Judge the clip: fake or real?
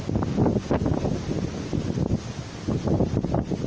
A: real